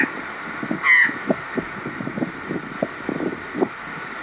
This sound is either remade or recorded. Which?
recorded